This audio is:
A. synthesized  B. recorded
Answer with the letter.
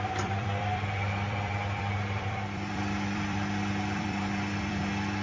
A